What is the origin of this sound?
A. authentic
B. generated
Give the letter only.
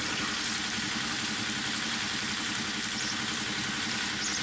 A